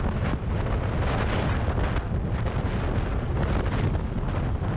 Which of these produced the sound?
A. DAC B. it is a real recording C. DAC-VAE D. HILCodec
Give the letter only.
B